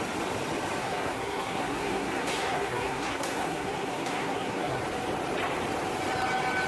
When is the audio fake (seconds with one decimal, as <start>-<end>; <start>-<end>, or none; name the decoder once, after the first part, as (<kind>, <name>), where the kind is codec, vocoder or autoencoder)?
0.8-4.8 (codec, SNAC)